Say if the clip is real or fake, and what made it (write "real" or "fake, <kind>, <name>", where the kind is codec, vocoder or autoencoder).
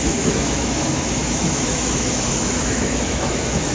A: fake, autoencoder, DAC-VAE